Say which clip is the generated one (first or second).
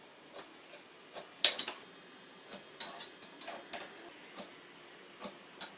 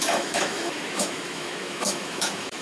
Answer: second